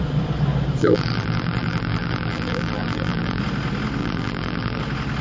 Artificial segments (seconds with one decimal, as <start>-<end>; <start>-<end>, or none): 0.8-3.4; 4.0-4.8